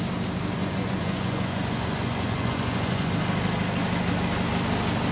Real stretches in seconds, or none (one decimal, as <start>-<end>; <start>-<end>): 0.0-0.6; 3.1-5.1